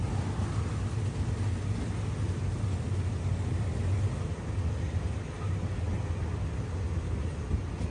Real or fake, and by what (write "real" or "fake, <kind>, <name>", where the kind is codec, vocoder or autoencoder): real